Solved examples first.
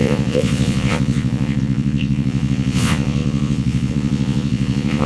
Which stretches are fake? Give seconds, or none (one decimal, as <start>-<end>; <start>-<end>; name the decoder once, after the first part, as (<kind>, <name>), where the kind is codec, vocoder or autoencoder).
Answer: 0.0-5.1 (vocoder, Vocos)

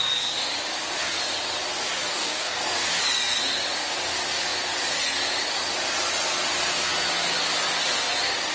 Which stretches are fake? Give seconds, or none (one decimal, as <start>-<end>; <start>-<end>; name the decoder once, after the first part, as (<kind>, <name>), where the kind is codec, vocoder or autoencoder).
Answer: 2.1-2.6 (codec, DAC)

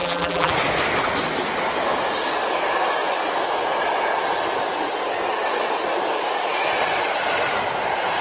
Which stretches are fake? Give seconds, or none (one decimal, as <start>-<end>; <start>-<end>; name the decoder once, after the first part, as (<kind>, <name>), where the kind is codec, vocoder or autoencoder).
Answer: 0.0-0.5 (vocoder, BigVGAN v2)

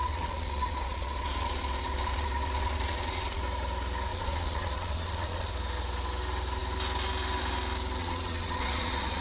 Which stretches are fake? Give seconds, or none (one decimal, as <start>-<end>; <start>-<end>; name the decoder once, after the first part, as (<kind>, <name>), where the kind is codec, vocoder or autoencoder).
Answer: 0.0-3.4 (vocoder, Vocos); 4.1-5.5; 8.0-9.2

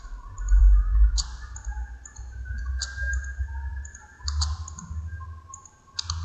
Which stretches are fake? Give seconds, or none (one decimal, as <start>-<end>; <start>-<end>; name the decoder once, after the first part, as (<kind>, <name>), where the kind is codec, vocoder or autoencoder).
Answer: 3.7-4.9 (vocoder, BigVGAN v2)

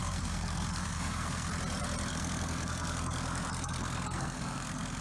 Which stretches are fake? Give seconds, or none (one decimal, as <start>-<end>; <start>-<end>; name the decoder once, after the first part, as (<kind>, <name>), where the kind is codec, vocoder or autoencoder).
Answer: 0.0-1.5 (codec, SNAC); 2.1-5.0

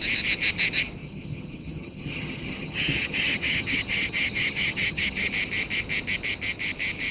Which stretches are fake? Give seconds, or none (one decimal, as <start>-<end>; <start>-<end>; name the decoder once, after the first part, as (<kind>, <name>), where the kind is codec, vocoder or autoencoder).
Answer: 1.0-5.3 (vocoder, HiFi-GAN)